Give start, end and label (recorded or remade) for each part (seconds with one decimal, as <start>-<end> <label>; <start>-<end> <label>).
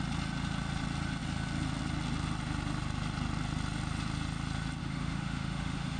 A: 0.0-4.8 recorded; 4.8-6.0 remade